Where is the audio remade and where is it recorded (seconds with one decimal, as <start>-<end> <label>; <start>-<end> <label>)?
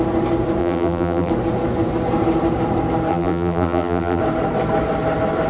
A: 0.0-0.6 recorded; 0.6-1.3 remade; 1.3-3.1 recorded; 3.1-4.2 remade; 4.2-5.5 recorded